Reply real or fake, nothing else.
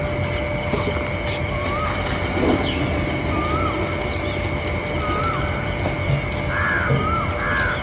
real